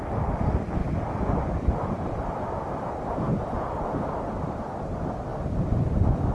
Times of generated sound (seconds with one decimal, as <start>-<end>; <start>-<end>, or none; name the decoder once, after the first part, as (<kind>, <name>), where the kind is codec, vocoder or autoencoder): 0.8-4.6 (vocoder, BigVGAN v2); 5.3-6.3